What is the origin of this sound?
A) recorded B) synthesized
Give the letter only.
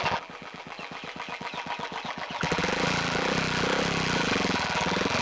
B